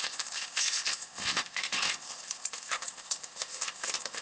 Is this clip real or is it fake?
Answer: fake